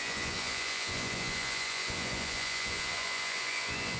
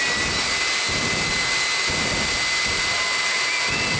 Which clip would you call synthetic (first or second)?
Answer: first